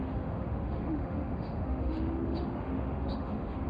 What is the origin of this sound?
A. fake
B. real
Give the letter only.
A